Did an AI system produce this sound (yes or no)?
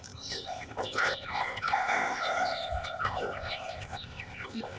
yes